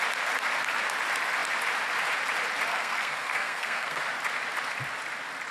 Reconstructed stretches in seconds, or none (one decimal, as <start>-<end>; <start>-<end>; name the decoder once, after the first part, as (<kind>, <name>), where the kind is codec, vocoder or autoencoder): 2.7-4.0 (codec, SNAC)